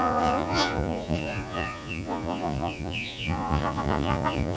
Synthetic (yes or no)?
yes